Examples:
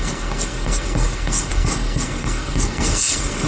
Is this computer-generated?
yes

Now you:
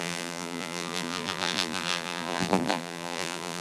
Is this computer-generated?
yes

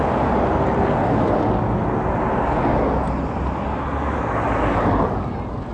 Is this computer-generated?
no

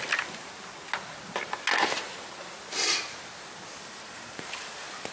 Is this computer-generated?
no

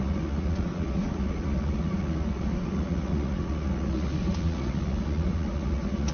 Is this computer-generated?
yes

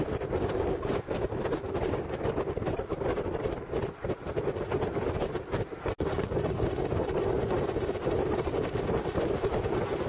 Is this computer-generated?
no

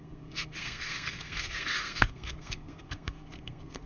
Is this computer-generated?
yes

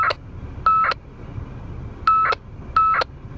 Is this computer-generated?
no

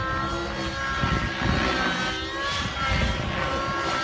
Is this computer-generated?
no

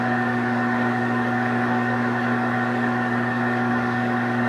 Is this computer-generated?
yes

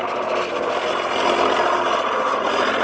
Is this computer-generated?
no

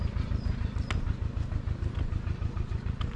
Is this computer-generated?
no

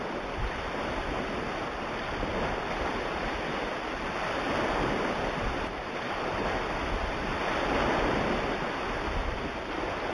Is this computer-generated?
no